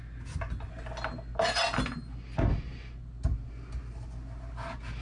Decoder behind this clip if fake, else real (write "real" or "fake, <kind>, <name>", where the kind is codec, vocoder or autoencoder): real